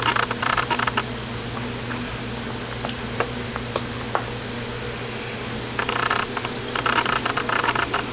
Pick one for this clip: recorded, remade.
recorded